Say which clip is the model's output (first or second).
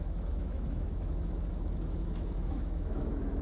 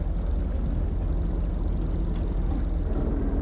first